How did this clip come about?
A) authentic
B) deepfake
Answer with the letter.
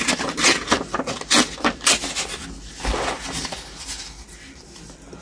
A